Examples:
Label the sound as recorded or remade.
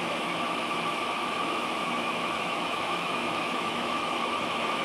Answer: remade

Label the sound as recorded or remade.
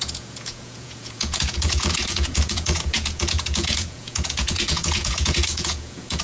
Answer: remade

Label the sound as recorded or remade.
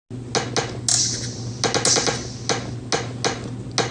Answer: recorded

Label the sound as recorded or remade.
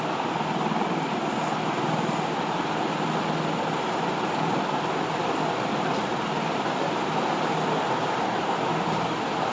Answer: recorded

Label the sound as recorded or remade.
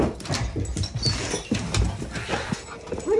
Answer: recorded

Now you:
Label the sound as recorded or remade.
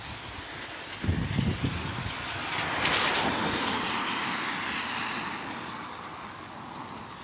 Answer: recorded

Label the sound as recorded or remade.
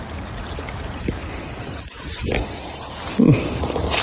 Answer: recorded